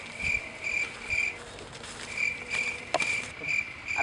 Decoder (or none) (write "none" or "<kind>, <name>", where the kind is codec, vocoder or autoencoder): none